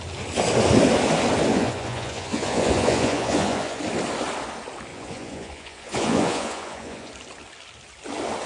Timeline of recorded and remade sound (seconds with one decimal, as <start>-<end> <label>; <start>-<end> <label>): 0.0-1.5 recorded; 1.5-3.8 remade; 3.8-4.9 recorded; 4.9-7.1 remade; 7.1-8.5 recorded